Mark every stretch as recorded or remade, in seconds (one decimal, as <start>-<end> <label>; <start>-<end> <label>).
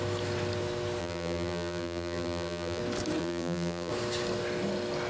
0.0-1.0 recorded; 1.0-2.8 remade; 2.8-3.2 recorded; 3.2-3.9 remade; 3.9-5.1 recorded